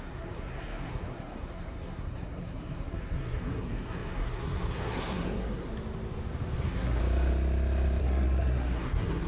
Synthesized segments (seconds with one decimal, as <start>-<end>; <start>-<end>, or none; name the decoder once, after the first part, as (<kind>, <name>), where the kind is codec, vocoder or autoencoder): 0.0-5.7 (codec, SNAC); 6.6-7.0; 8.0-9.3